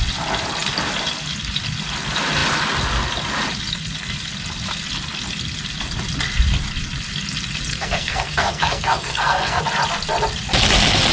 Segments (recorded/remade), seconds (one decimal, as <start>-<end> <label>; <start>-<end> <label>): 0.0-7.7 recorded; 7.7-9.6 remade; 9.6-11.1 recorded